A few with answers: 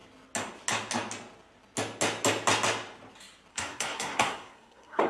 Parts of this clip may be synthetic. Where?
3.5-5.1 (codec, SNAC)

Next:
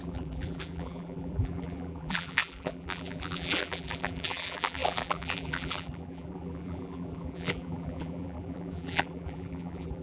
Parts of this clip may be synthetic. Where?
0.0-10.0 (vocoder, BigVGAN v2)

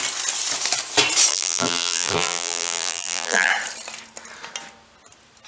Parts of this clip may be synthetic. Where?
1.3-3.5 (vocoder, BigVGAN v2)